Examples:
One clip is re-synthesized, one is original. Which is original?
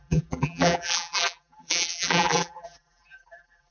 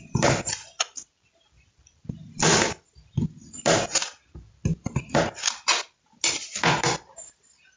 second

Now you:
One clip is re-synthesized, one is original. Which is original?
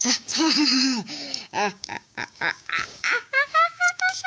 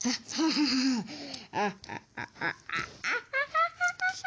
second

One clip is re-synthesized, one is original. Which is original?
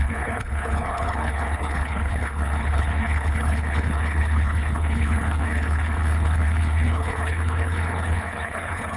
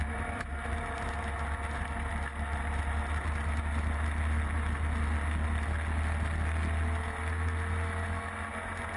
second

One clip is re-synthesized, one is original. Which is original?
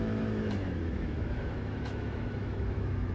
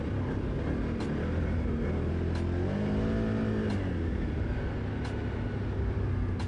second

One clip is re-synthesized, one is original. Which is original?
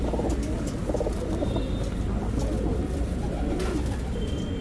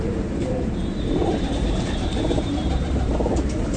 first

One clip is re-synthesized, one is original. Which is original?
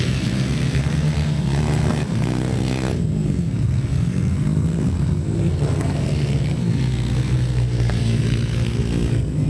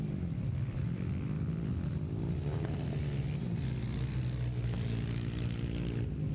second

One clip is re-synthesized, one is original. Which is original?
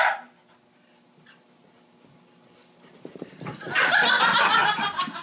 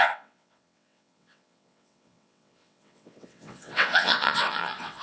first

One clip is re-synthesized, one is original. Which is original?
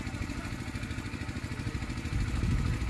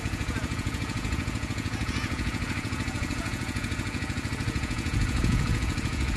first